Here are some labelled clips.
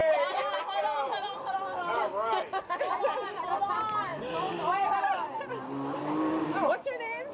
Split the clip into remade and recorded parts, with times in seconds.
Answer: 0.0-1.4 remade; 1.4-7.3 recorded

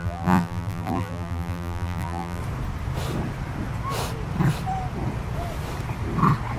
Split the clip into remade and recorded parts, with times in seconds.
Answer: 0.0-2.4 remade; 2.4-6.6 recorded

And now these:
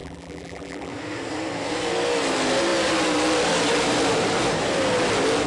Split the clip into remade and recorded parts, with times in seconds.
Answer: 0.0-0.9 remade; 0.9-5.5 recorded